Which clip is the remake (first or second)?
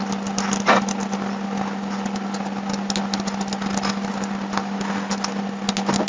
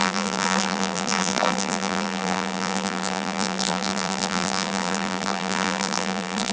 second